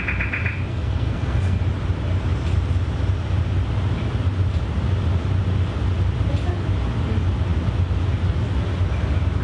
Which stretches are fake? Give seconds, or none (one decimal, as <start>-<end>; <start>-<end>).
0.7-1.6